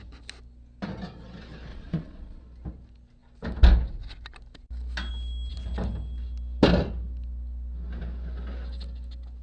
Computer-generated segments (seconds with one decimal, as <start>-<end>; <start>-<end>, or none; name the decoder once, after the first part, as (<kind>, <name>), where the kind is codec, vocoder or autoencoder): 1.7-2.4 (vocoder, Vocos)